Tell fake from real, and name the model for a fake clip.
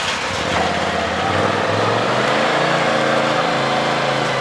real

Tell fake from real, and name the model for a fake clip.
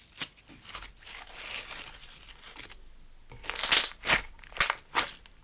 real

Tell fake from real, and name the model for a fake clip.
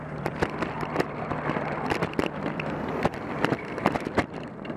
fake, vocoder, BigVGAN v2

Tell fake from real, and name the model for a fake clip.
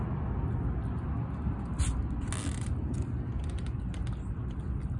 real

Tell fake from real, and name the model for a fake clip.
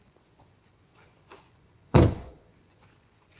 fake, vocoder, Vocos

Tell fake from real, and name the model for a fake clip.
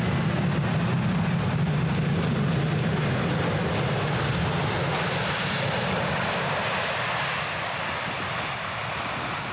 real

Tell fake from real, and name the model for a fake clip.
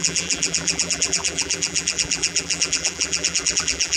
fake, vocoder, BigVGAN v2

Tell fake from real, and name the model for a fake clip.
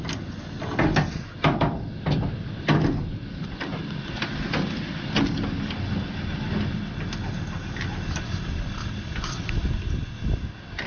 real